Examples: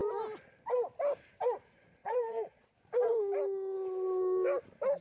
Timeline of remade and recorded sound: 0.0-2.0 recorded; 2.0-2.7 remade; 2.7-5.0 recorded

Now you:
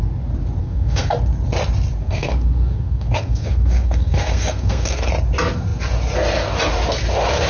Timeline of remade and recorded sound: 0.0-0.6 recorded; 0.6-1.1 remade; 1.1-2.0 recorded; 2.0-5.1 remade; 5.1-7.5 recorded

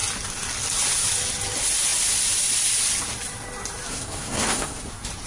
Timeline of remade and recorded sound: 0.0-3.9 recorded; 3.9-4.8 remade; 4.8-5.3 recorded